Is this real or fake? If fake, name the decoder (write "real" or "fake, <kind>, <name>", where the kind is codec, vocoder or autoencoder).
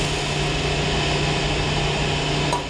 real